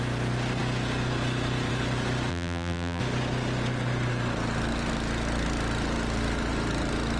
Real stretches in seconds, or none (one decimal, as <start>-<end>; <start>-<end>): 0.0-2.3; 3.0-7.2